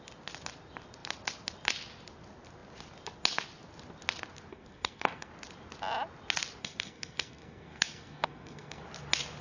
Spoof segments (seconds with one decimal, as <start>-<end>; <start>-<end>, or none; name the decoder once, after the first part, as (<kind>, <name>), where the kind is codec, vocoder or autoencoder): 4.5-5.3 (codec, SNAC); 6.6-8.8